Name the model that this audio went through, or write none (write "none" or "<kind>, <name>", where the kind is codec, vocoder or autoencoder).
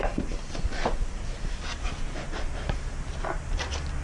vocoder, BigVGAN v2